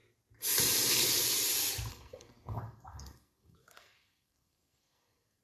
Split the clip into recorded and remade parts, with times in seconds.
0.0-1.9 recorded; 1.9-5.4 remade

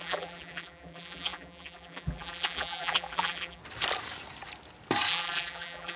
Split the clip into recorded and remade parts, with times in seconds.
0.0-3.6 remade; 3.6-5.1 recorded; 5.1-6.0 remade

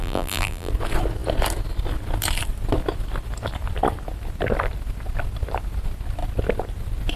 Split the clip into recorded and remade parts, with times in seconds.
0.0-0.7 remade; 0.7-7.2 recorded